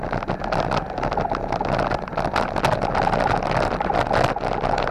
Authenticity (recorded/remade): recorded